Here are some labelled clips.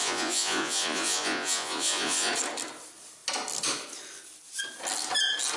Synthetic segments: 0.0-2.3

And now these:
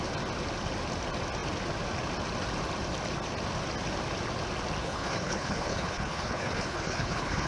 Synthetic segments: 4.8-7.5

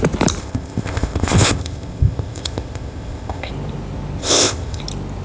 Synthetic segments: 0.4-3.5; 4.2-4.8

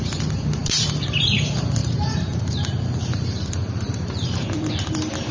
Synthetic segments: 0.6-1.4; 1.8-4.7

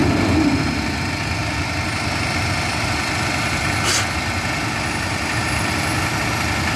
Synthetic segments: none

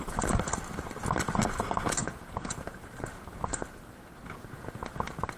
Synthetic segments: 2.0-2.8; 4.0-4.7